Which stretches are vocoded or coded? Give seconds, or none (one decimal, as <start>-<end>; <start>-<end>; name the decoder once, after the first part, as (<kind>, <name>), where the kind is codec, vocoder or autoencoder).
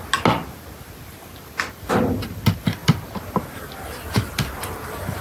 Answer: none